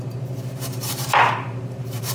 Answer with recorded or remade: remade